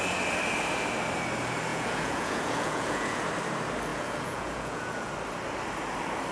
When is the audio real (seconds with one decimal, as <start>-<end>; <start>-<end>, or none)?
0.0-1.7; 3.2-3.9; 5.1-6.3